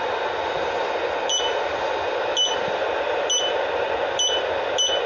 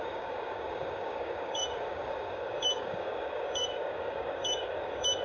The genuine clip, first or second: first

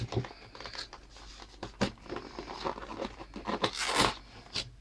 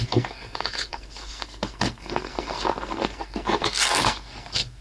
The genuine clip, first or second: first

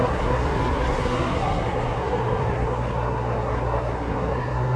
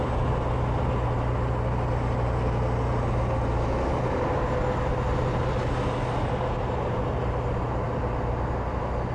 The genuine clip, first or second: second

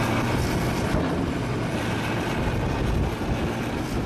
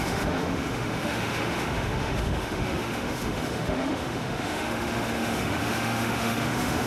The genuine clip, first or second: first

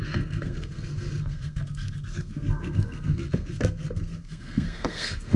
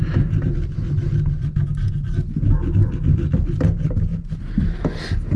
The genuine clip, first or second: second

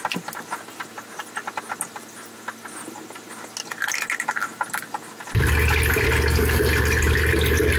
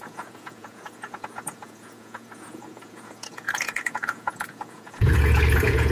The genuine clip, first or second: first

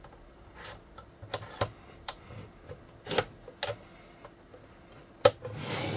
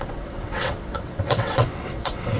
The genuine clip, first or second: first